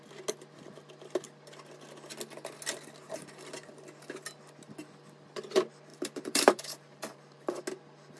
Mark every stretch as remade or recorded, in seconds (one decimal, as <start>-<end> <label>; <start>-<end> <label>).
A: 0.0-5.9 recorded; 5.9-7.6 remade; 7.6-8.2 recorded